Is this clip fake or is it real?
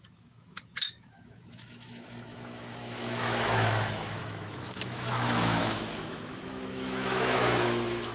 fake